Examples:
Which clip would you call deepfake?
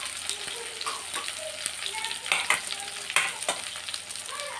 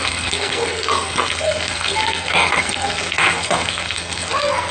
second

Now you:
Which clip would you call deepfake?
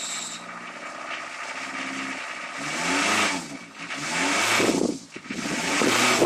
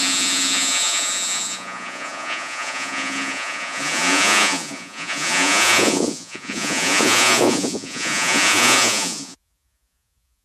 second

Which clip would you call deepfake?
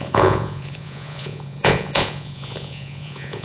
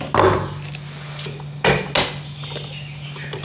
first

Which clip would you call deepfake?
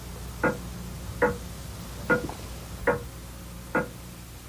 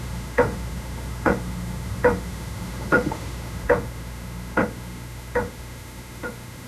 second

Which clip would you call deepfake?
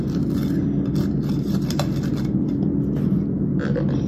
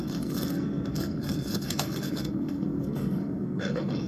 second